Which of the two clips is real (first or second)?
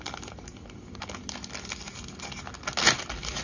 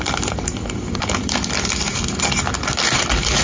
first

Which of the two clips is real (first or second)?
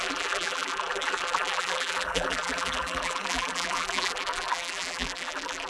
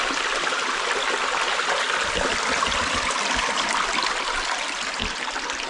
second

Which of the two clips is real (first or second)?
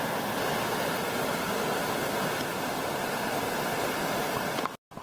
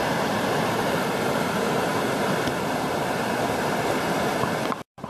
first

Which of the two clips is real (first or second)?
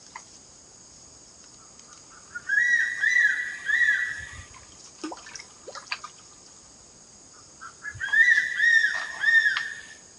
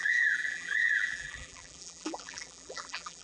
first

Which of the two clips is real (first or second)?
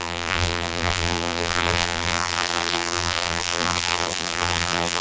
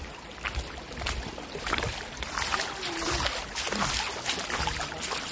second